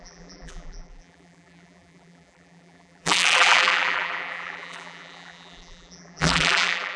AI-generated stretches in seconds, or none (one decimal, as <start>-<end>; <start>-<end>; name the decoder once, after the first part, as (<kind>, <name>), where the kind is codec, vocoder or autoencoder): 0.0-7.0 (vocoder, BigVGAN v2)